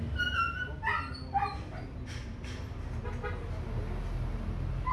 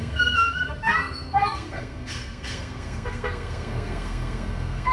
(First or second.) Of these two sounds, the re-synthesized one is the second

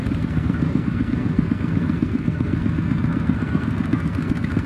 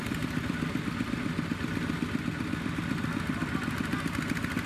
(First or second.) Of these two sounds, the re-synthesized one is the first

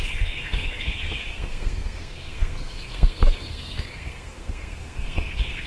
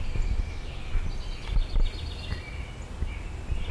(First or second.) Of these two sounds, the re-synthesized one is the first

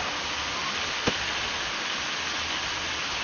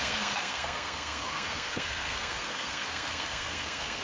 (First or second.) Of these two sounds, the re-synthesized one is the second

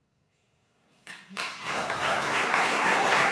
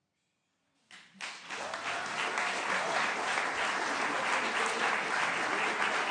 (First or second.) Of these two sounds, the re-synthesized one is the first